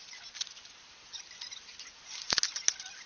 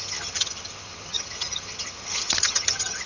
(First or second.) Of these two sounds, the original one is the first